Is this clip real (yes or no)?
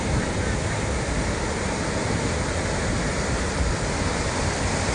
yes